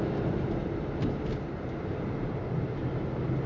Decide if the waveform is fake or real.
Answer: real